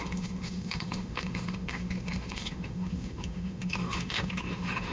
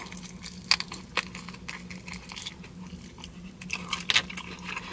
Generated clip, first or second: first